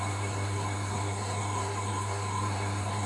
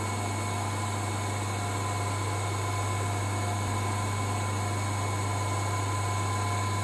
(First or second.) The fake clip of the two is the first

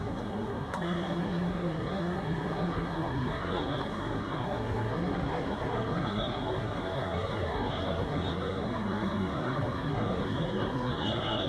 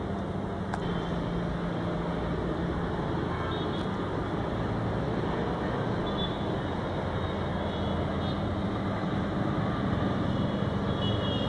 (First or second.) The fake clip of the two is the first